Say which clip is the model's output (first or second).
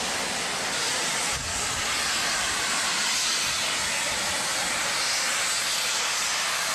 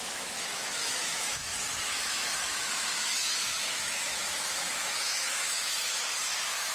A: second